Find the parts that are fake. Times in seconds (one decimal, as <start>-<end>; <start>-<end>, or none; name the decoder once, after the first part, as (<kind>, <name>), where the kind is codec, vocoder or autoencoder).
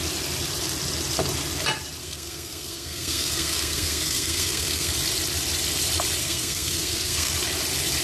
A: 2.0-4.9 (codec, SNAC); 6.2-7.3